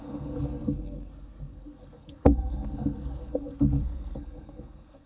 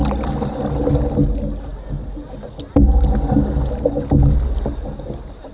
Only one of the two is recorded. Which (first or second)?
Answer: second